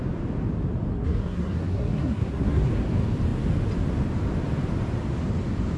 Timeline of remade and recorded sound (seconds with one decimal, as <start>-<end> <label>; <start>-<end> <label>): 0.0-0.9 recorded; 0.9-2.7 remade; 2.7-5.8 recorded